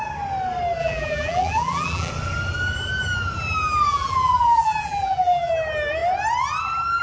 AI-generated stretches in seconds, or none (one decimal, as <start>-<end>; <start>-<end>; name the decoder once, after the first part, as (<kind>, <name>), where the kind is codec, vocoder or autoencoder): 0.8-2.1 (vocoder, BigVGAN v2); 3.9-5.5